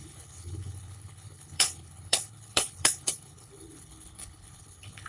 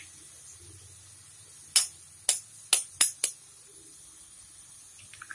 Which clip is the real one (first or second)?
second